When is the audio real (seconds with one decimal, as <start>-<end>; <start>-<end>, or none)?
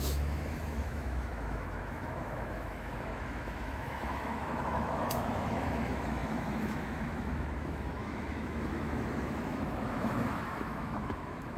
none